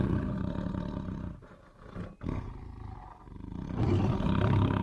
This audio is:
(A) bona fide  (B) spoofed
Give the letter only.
A